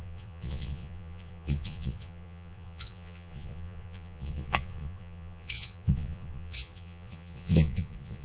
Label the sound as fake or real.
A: fake